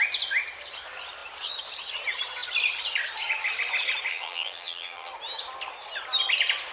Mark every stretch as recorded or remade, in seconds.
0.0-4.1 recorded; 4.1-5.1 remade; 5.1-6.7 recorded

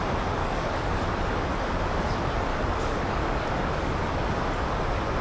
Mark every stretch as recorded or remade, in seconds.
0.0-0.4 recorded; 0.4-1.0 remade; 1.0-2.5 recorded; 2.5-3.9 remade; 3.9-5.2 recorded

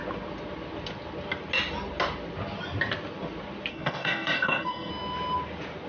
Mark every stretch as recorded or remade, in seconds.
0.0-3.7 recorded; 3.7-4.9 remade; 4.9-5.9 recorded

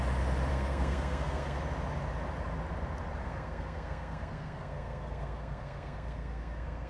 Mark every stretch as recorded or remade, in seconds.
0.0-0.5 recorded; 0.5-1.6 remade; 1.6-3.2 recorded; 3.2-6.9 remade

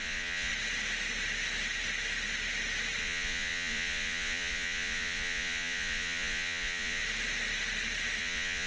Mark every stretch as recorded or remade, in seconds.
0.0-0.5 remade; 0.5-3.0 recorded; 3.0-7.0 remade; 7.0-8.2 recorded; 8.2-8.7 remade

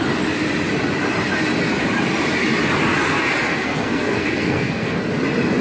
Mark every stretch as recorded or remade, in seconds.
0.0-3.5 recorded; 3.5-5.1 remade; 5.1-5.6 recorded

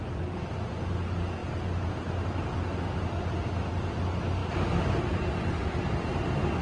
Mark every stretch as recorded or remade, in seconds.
0.0-6.6 recorded